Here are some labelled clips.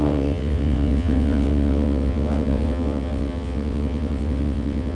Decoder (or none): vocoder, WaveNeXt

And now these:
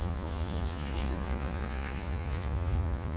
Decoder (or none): vocoder, Vocos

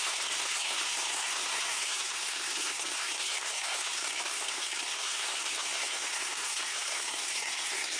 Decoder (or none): codec, SNAC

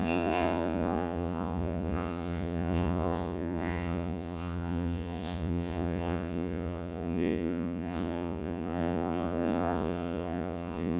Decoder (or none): vocoder, Vocos